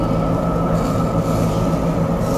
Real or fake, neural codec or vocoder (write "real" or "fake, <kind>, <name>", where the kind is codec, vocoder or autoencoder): real